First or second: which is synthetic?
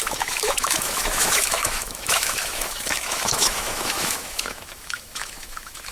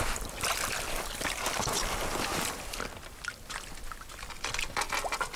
first